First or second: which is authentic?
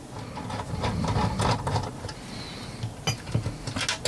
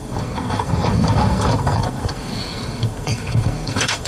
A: first